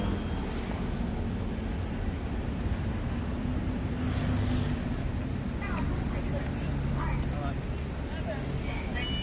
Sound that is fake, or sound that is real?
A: real